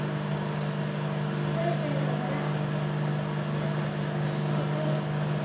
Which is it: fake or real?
real